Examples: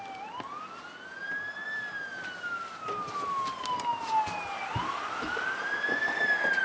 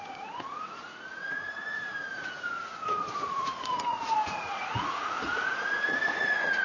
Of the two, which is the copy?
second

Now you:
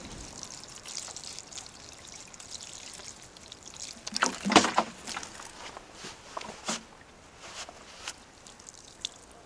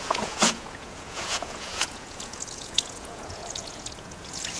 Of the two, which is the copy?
second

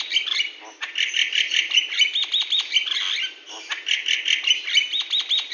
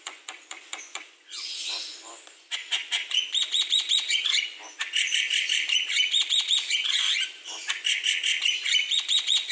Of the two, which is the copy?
second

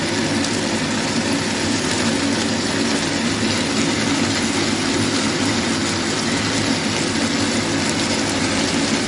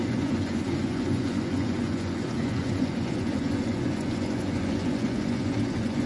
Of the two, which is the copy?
second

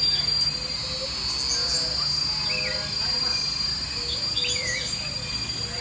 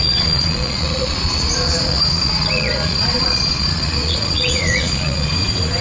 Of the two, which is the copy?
second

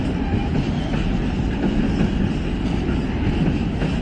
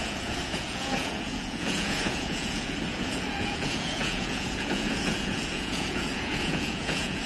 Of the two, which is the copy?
second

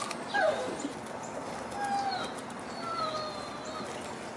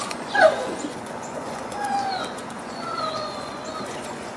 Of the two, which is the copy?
second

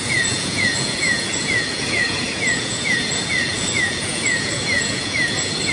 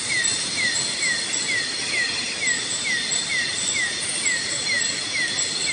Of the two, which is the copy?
first